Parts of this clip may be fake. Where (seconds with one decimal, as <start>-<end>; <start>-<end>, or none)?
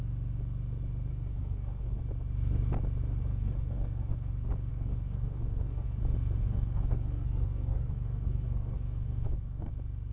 1.1-2.0; 3.3-4.3; 4.7-6.0; 6.4-9.7